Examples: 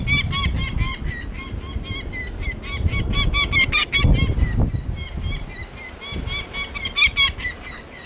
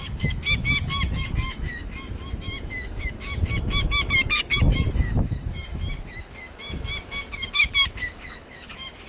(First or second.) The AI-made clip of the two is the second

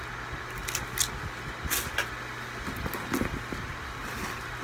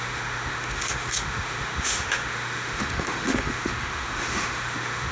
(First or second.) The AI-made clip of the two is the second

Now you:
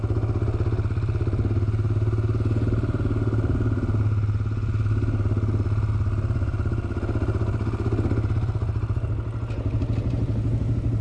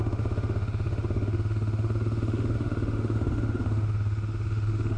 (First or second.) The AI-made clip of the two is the second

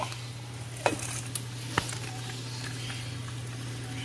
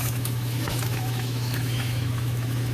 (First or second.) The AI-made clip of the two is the second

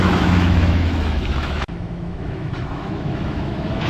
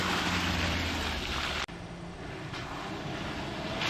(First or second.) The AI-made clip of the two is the first